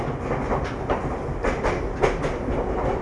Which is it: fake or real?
real